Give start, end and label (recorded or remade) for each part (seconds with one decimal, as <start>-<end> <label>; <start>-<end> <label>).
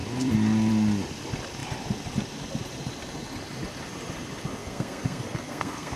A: 0.0-4.6 recorded; 4.6-6.0 remade